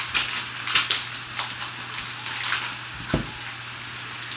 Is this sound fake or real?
real